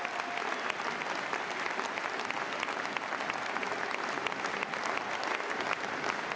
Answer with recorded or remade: recorded